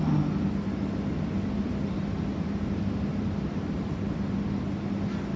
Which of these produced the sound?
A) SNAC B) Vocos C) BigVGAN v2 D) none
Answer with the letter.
D